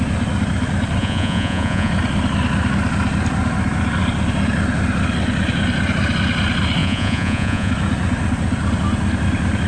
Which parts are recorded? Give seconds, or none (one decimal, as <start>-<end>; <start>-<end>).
0.0-1.0; 1.9-6.8; 7.7-9.7